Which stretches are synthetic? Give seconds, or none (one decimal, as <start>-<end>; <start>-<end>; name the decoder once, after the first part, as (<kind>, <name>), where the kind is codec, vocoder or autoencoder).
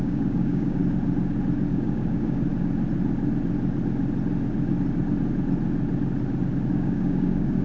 0.0-0.8 (codec, DAC); 1.7-2.5; 6.7-7.6